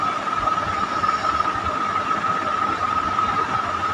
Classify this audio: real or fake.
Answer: real